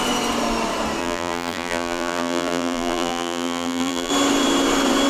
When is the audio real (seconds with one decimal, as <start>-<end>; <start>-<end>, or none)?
0.0-1.0; 4.1-5.1